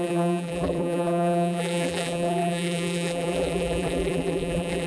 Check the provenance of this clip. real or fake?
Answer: fake